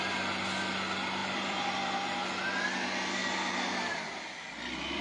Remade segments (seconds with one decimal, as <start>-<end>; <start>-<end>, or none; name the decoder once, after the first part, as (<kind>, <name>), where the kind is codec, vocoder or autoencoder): 1.2-1.7 (vocoder, BigVGAN v2)